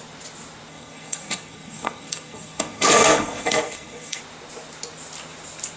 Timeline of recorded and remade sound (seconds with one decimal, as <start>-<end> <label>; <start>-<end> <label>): 0.0-0.7 recorded; 0.7-4.2 remade; 4.2-5.8 recorded